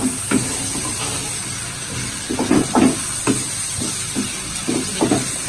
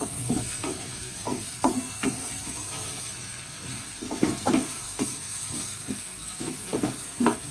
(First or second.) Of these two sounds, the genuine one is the first